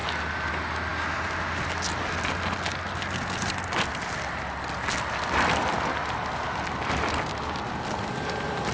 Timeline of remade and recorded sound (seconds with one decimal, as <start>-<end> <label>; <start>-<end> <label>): 0.0-8.7 recorded